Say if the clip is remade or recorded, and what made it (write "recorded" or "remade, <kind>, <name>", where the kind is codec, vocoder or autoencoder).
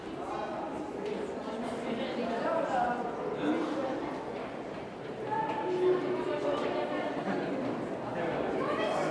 recorded